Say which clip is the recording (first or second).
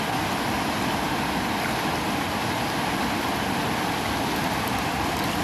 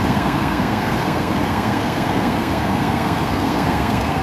first